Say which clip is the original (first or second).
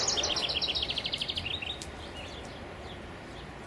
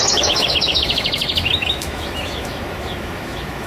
first